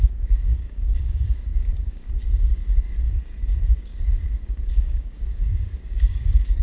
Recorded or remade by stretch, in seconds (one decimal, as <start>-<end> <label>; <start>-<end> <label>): 0.0-2.6 remade; 2.6-3.8 recorded; 3.8-6.6 remade